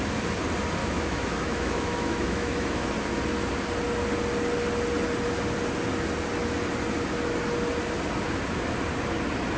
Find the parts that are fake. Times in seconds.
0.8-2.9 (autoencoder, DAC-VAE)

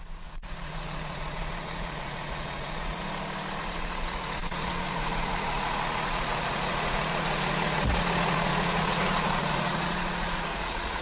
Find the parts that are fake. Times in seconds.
0.0-3.0 (vocoder, Vocos); 3.6-11.0